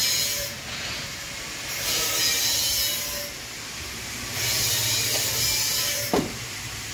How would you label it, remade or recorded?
recorded